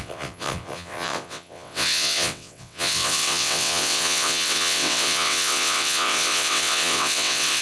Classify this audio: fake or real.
fake